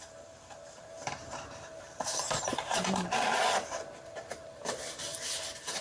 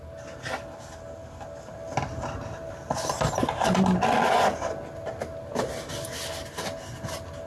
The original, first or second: second